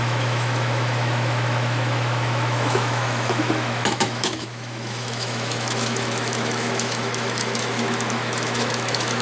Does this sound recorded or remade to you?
remade